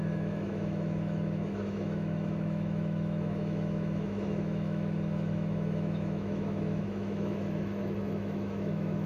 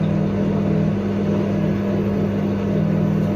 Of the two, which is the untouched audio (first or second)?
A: second